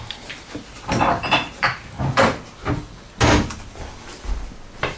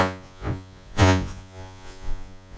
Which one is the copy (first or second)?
second